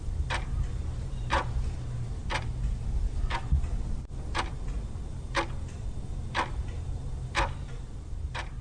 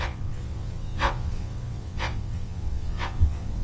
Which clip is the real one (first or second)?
first